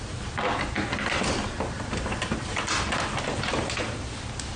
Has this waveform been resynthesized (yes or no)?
no